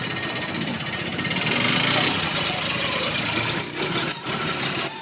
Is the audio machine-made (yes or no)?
no